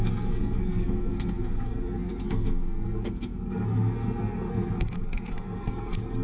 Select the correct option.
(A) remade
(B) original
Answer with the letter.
A